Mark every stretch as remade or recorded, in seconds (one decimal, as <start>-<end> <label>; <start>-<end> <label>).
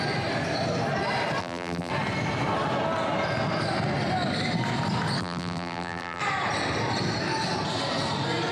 0.0-1.4 recorded; 1.4-1.9 remade; 1.9-5.2 recorded; 5.2-6.2 remade; 6.2-8.5 recorded